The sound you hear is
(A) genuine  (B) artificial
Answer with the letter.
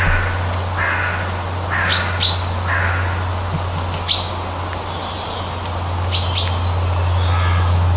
A